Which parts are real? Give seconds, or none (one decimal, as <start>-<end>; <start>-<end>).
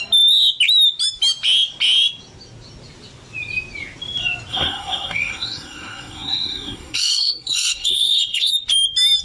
0.0-4.5; 8.5-9.2